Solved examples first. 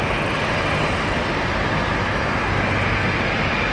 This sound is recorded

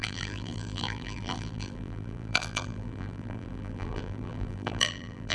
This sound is remade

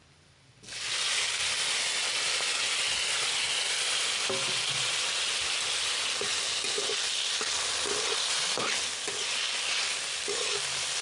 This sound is recorded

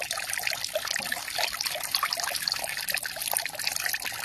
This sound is recorded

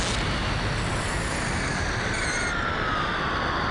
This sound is recorded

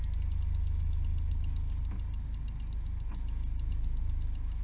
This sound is recorded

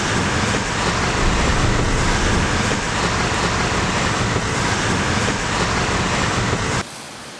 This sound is recorded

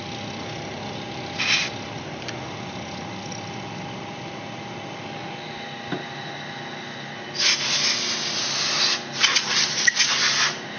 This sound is recorded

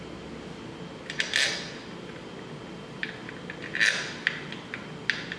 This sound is recorded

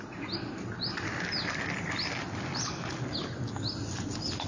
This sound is recorded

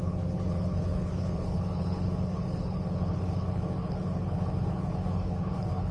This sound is remade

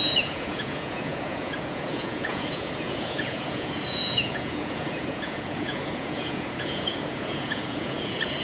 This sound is remade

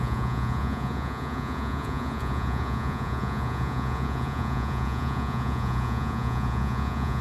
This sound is remade